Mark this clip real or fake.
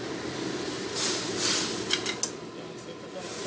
real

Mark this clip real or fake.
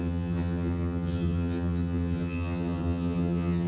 fake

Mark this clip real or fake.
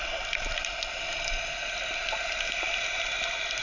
real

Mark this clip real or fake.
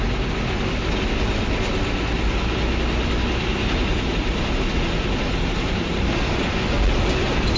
real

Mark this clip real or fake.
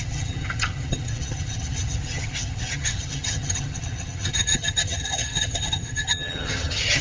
fake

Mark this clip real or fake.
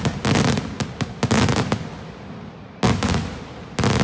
real